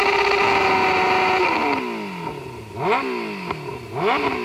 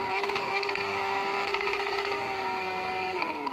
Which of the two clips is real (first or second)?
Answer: first